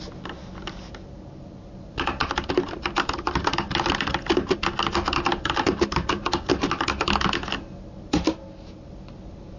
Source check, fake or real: real